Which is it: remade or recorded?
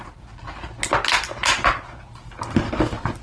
recorded